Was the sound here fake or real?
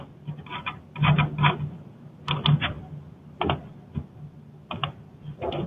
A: real